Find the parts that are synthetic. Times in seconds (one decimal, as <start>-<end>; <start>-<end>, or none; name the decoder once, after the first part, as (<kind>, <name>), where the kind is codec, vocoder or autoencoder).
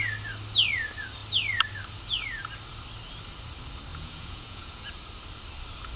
3.9-4.9 (vocoder, Vocos)